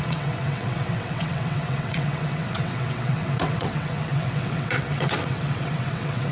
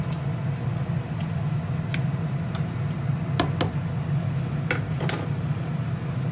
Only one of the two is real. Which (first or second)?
second